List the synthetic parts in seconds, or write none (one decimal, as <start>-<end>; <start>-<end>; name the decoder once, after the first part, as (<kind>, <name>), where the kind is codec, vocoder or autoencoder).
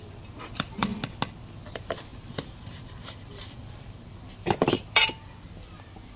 0.0-0.9 (vocoder, BigVGAN v2); 1.7-5.0